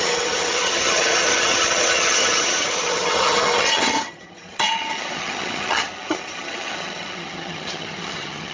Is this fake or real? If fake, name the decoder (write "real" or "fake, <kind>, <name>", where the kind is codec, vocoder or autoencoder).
fake, vocoder, HiFi-GAN